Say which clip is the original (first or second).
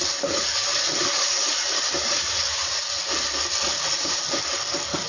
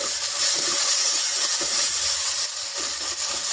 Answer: first